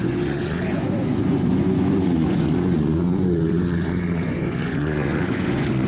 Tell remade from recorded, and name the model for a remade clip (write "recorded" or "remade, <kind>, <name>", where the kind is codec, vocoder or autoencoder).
remade, vocoder, Vocos